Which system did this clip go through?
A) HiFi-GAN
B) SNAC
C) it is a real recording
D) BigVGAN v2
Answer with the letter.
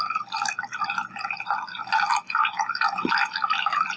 C